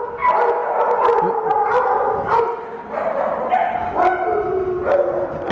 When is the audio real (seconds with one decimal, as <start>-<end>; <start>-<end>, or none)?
0.0-5.5